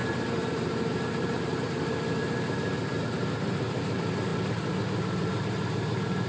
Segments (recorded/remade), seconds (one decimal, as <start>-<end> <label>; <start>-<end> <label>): 0.0-4.3 remade; 4.3-5.3 recorded; 5.3-6.3 remade